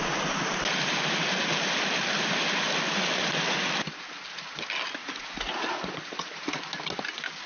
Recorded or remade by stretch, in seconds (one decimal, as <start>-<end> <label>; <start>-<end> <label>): 0.0-5.0 recorded; 5.0-6.6 remade; 6.6-7.5 recorded